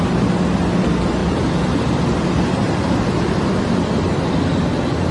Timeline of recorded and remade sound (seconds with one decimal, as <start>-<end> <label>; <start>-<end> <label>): 0.0-1.2 recorded; 1.2-4.3 remade; 4.3-5.1 recorded